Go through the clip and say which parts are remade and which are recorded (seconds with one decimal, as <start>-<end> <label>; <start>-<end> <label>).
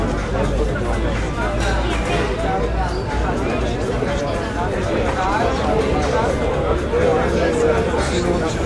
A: 0.0-8.7 recorded